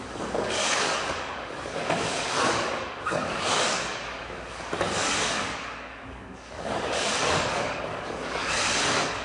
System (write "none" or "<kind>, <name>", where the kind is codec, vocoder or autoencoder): codec, DAC